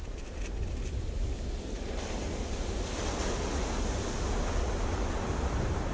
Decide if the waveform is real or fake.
real